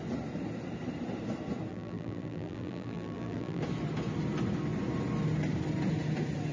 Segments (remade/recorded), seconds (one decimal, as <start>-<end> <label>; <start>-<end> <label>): 0.0-1.7 recorded; 1.7-3.6 remade; 3.6-6.5 recorded

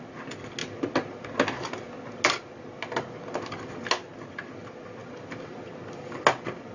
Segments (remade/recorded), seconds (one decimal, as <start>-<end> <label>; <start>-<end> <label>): 0.0-5.0 recorded; 5.0-5.7 remade; 5.7-6.7 recorded

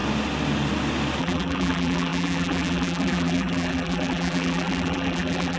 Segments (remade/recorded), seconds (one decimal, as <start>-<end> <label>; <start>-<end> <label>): 0.0-1.2 recorded; 1.2-5.6 remade

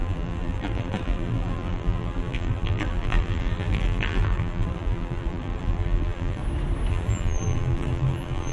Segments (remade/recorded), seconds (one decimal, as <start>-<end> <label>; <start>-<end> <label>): 0.0-6.4 remade; 6.4-6.9 recorded; 6.9-8.5 remade

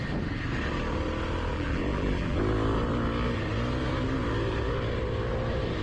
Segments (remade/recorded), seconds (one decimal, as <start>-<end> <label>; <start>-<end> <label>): 0.0-1.5 recorded; 1.5-2.4 remade; 2.4-5.8 recorded

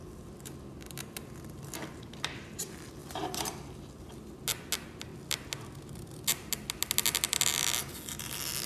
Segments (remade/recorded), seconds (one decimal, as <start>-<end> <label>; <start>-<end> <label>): 0.0-2.6 remade; 2.6-3.0 recorded; 3.0-4.4 remade; 4.4-8.7 recorded